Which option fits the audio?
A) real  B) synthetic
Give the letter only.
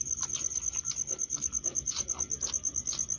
A